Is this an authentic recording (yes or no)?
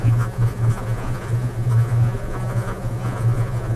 no